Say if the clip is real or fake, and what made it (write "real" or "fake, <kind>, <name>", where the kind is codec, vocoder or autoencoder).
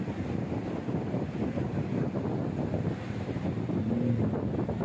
real